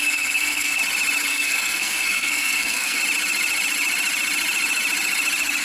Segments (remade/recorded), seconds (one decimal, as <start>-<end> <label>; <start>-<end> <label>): 0.0-0.8 remade; 0.8-1.3 recorded; 1.3-3.0 remade; 3.0-5.6 recorded